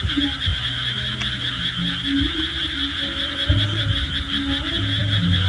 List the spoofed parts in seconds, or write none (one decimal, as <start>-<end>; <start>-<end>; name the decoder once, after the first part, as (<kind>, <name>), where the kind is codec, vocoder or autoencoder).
none